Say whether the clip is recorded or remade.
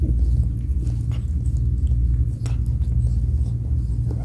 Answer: recorded